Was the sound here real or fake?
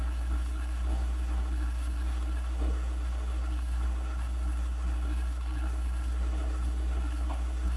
fake